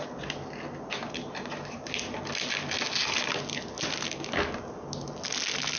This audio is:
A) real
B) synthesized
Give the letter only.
A